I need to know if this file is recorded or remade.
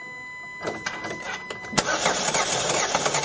recorded